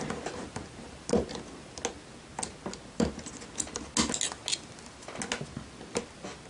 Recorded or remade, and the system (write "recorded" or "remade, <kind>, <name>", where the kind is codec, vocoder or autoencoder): recorded